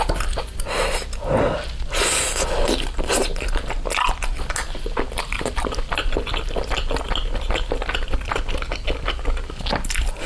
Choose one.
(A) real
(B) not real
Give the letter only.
A